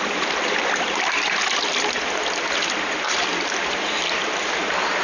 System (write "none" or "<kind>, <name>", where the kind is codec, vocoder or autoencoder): vocoder, BigVGAN v2